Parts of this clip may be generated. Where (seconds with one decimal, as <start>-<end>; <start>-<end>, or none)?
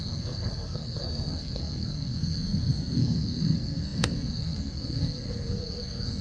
0.0-6.2